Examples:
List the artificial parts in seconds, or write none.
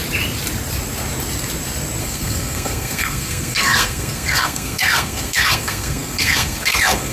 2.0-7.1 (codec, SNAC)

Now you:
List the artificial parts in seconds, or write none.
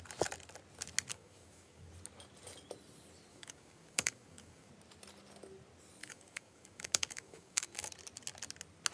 1.1-1.9 (codec, DAC); 3.3-4.7; 6.0-7.9